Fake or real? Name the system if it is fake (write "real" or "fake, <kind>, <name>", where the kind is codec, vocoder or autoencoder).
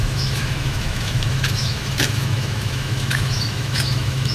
fake, autoencoder, DAC-VAE